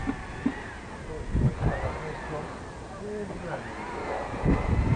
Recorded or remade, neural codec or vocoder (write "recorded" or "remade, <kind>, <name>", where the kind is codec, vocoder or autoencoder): recorded